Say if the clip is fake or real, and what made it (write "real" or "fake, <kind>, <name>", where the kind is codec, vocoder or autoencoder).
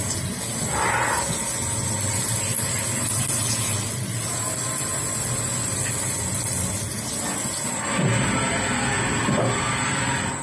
real